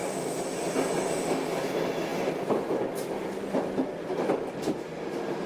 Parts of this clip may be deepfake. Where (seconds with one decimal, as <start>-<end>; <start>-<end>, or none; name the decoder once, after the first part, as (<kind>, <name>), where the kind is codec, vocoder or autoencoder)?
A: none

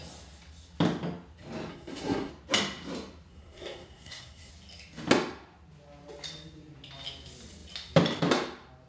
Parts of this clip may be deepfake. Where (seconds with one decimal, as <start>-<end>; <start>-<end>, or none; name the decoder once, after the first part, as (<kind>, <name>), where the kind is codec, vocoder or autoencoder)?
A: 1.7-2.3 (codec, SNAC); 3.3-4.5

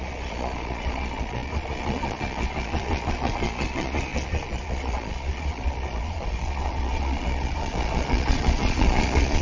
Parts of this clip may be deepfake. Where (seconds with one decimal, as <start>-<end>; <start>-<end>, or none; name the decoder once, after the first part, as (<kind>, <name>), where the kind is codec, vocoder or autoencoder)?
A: 0.0-9.4 (vocoder, Vocos)